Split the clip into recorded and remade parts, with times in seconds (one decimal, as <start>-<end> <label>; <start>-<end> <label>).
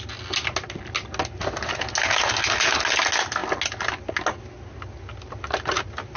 0.0-6.2 recorded